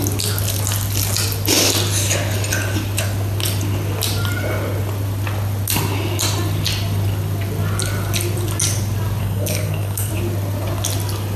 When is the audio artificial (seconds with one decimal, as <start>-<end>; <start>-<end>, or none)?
9.2-10.1